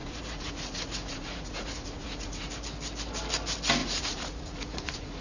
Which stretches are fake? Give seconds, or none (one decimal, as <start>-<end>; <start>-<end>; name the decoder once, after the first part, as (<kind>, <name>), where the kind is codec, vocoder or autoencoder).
0.0-2.5 (vocoder, Vocos); 3.8-5.2